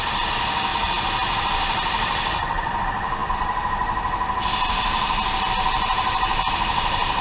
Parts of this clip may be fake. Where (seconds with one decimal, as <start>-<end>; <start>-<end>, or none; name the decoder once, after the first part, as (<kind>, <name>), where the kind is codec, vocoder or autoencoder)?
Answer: 0.7-2.8 (vocoder, BigVGAN v2); 3.2-6.5